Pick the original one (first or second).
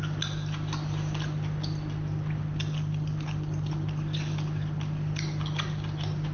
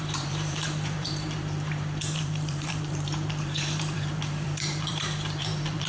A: first